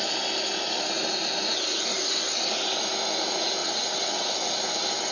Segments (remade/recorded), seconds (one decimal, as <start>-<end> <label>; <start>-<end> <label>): 0.0-3.6 recorded; 3.6-4.3 remade; 4.3-5.1 recorded